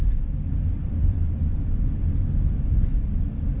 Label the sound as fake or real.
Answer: real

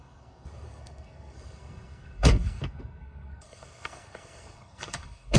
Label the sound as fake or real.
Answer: fake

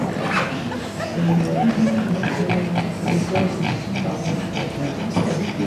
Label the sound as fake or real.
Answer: real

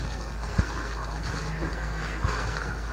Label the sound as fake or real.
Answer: fake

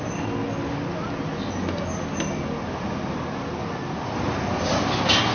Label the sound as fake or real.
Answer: real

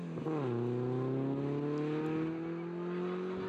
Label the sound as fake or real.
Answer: real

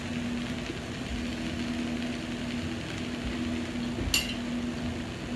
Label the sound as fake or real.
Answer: real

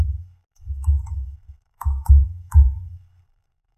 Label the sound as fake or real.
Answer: fake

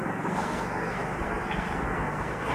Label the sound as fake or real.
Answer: fake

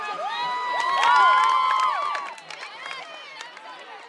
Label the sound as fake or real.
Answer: real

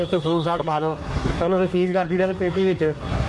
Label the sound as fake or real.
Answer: fake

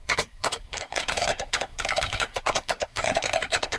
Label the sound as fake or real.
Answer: fake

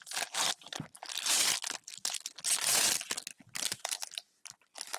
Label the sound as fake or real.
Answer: real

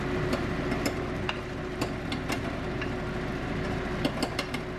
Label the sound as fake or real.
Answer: real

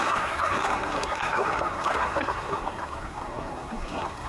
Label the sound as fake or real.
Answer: fake